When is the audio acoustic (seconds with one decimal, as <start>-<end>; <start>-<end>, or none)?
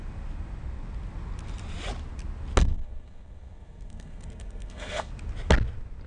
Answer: 0.0-2.6; 5.1-6.1